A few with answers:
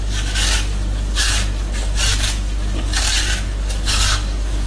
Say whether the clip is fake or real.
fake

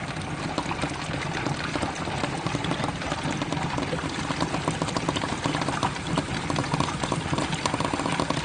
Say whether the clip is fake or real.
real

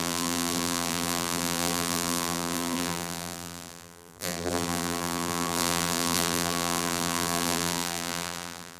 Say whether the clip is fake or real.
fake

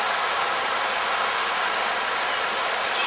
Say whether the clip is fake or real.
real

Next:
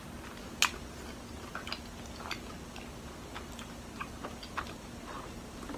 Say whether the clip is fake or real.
real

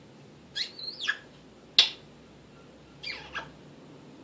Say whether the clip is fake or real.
real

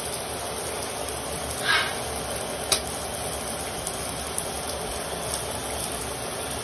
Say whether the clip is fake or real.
real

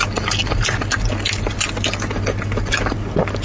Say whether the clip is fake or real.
real